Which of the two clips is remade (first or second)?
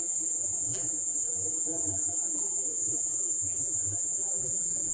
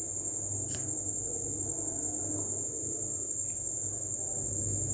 first